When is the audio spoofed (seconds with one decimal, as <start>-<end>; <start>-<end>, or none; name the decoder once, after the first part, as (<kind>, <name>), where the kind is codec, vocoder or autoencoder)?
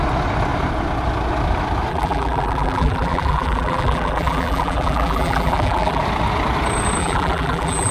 1.9-6.0 (vocoder, BigVGAN v2); 7.0-7.9